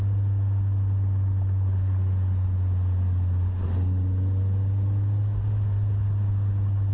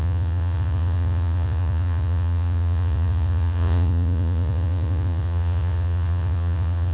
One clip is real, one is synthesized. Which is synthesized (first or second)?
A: second